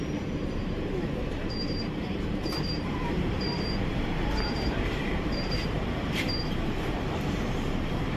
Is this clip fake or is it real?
fake